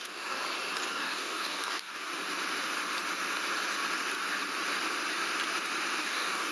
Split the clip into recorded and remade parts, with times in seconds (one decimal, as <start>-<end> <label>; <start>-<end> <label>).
0.0-0.4 remade; 0.4-0.9 recorded; 0.9-2.1 remade; 2.1-6.0 recorded; 6.0-6.5 remade